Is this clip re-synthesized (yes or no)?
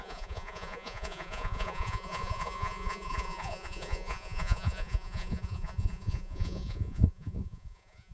yes